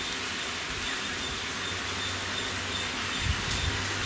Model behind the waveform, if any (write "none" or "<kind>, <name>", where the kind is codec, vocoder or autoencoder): none